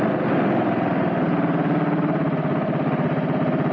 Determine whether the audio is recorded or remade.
recorded